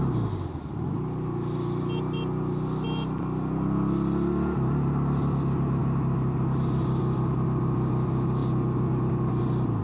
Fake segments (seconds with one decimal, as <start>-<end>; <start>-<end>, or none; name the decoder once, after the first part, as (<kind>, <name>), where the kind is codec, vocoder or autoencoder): none